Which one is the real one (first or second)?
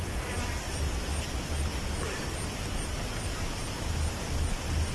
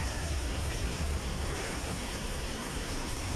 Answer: first